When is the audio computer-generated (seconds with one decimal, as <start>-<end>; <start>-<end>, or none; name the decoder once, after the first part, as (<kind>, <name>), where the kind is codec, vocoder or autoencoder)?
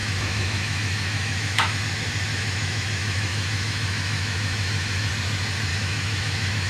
0.0-1.8 (autoencoder, DAC-VAE); 2.3-5.1; 5.7-6.7